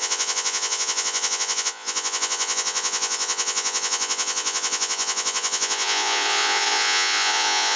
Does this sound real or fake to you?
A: fake